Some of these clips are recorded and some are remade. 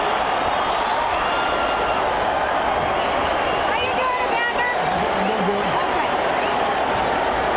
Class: recorded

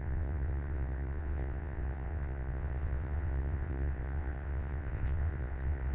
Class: remade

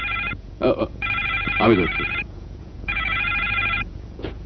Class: remade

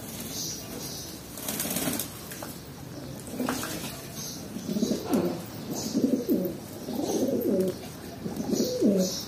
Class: recorded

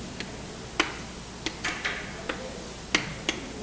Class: recorded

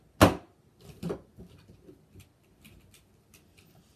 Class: recorded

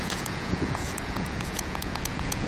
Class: remade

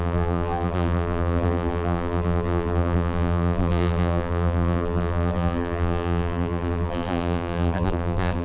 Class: remade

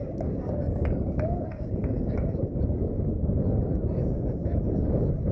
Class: remade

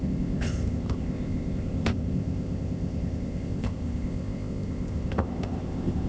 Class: remade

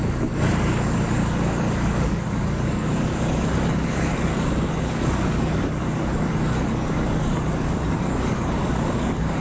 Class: remade